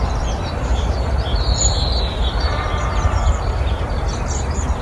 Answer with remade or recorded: remade